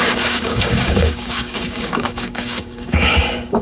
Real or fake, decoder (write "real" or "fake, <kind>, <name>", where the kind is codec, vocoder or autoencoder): fake, codec, DAC